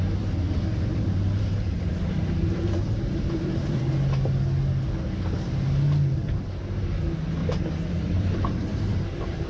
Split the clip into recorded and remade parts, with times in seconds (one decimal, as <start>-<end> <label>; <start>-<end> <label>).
0.0-0.9 recorded; 0.9-3.9 remade; 3.9-7.4 recorded; 7.4-9.5 remade